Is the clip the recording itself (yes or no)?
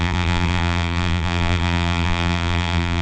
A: no